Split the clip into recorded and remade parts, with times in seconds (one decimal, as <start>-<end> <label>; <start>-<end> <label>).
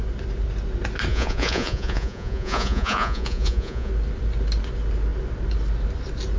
0.0-1.1 recorded; 1.1-3.9 remade; 3.9-6.4 recorded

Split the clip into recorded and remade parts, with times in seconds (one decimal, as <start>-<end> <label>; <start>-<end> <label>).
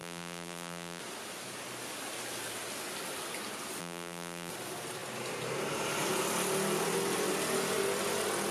0.0-1.0 remade; 1.0-3.8 recorded; 3.8-4.5 remade; 4.5-8.5 recorded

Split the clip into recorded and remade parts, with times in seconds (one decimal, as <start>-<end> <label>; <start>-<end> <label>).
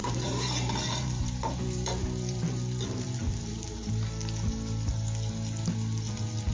0.0-3.9 remade; 3.9-6.5 recorded